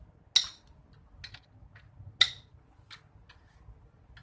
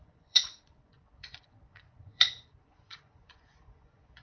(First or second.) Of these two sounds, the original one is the first